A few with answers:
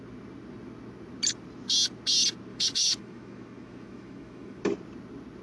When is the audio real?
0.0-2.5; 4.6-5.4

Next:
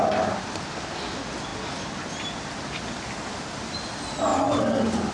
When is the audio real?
0.0-5.1

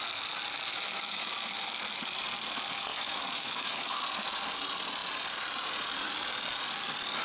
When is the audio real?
0.0-0.7; 1.3-2.9; 4.0-7.2

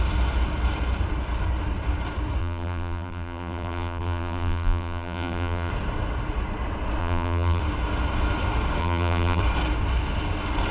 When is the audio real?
0.0-2.4; 5.7-7.0; 7.6-8.8; 9.4-10.7

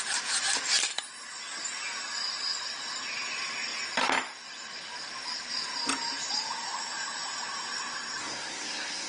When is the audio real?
0.0-8.2

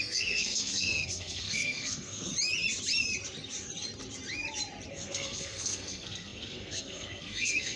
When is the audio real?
2.3-4.9

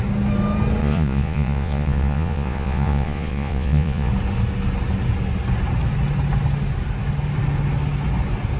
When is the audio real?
0.0-0.8; 4.1-8.6

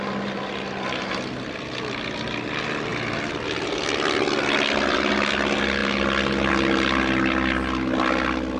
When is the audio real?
0.0-8.6